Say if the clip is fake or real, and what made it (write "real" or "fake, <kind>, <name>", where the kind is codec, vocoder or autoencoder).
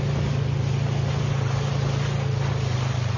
real